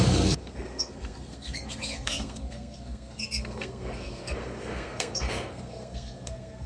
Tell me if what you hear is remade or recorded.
remade